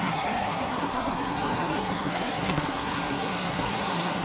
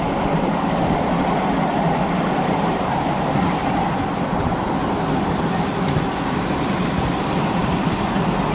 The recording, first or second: second